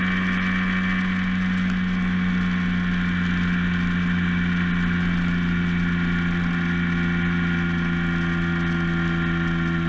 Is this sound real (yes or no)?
yes